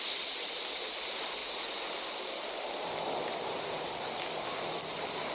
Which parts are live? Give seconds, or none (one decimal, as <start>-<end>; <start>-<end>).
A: 0.0-5.3